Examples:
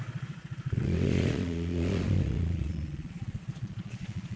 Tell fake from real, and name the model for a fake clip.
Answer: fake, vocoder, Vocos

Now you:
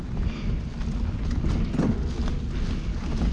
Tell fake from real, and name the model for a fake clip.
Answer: real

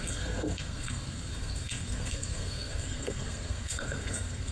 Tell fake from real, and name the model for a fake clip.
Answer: fake, codec, SNAC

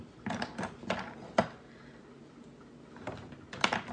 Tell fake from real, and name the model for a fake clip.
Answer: real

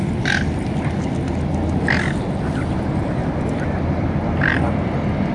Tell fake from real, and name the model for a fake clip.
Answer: real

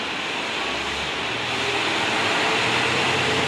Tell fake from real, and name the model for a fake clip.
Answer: real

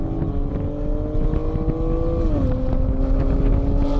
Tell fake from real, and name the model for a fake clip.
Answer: real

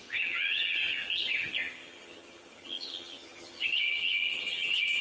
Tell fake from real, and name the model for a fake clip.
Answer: fake, vocoder, HiFi-GAN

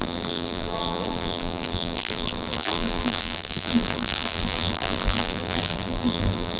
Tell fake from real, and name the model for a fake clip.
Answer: fake, vocoder, BigVGAN v2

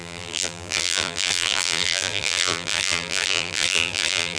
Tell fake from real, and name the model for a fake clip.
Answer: fake, vocoder, BigVGAN v2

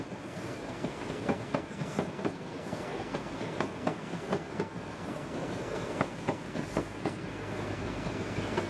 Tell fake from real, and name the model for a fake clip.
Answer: fake, codec, SNAC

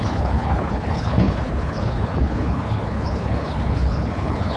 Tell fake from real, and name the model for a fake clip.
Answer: fake, codec, HILCodec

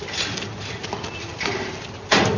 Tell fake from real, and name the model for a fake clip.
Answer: real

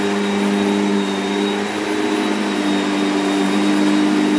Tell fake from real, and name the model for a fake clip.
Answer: real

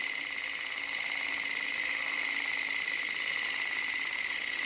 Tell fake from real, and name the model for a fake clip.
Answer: real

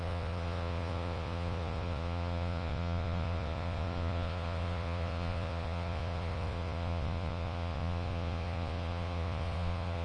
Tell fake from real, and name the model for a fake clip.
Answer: fake, vocoder, Vocos